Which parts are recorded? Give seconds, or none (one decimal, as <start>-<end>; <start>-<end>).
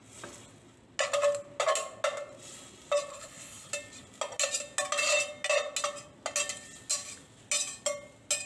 0.0-3.1; 3.7-8.5